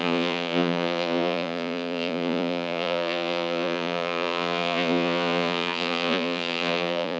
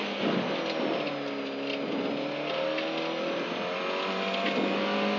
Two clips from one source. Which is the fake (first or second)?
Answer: first